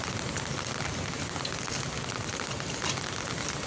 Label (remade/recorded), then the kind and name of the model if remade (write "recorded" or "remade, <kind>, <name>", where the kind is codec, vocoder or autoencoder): recorded